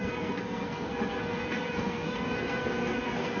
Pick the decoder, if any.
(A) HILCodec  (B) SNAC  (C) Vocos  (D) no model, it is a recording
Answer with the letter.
B